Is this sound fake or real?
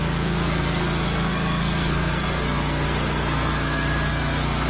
fake